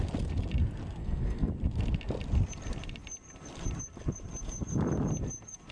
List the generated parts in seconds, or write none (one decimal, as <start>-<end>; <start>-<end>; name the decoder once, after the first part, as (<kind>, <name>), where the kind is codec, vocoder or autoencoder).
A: 1.0-1.5 (codec, SNAC)